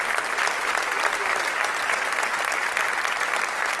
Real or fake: real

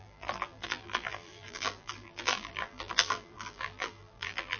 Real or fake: fake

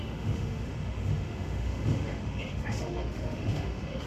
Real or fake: fake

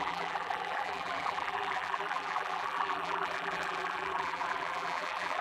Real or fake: fake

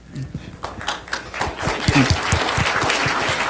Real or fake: real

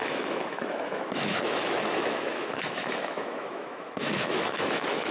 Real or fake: fake